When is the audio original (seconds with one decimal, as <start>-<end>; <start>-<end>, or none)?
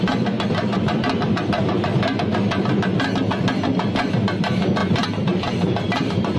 0.0-4.8